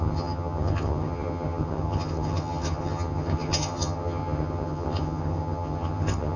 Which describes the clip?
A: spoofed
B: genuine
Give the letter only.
A